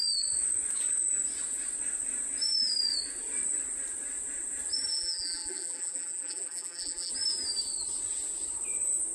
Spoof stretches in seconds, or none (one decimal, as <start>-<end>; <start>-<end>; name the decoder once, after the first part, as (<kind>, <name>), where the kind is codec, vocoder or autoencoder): 4.9-7.1 (vocoder, BigVGAN v2)